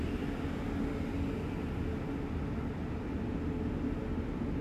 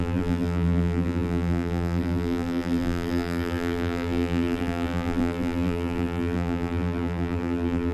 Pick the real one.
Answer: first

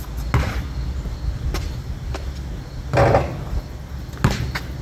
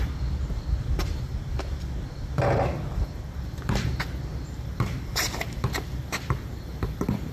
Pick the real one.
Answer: first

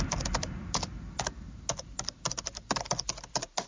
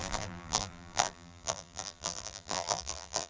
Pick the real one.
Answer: first